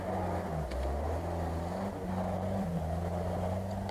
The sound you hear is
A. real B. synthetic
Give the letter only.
A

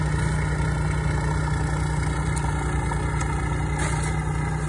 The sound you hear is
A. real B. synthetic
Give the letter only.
A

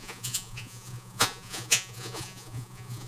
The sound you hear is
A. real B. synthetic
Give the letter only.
B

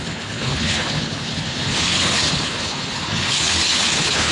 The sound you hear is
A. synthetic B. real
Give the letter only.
A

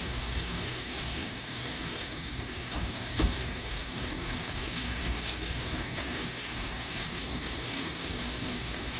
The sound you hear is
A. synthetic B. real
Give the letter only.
A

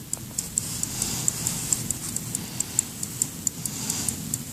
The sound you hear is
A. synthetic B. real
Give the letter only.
B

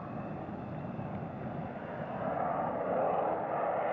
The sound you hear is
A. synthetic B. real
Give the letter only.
B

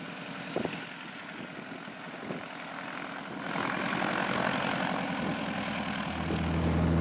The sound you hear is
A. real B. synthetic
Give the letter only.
A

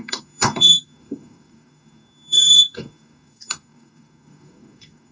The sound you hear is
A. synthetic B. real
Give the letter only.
A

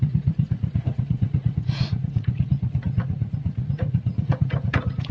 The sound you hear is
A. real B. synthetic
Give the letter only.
B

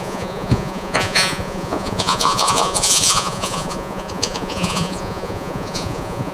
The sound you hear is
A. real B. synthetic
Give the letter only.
B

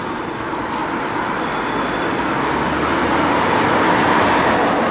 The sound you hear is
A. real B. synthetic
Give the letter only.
A